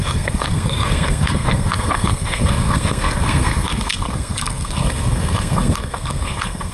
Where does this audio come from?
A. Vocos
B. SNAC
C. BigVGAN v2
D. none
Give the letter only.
B